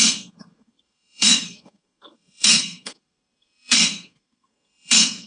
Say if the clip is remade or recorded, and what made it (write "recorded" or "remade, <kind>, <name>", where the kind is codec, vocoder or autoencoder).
remade, codec, SNAC